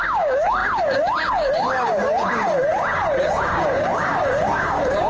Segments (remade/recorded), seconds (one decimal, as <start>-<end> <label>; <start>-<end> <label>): 0.0-2.7 remade; 2.7-3.2 recorded; 3.2-5.1 remade